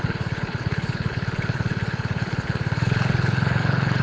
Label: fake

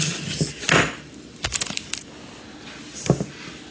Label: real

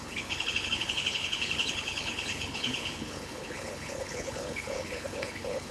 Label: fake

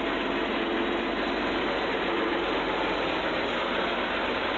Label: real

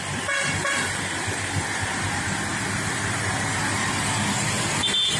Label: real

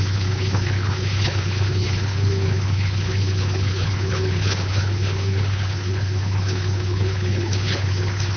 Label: fake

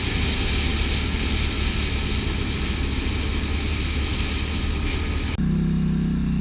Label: real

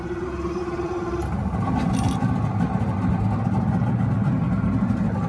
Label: real